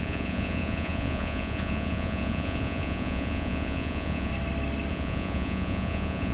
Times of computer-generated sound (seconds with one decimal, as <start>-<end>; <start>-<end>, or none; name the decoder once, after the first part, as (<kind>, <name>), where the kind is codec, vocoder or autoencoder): 0.0-4.3 (vocoder, Vocos); 4.9-6.3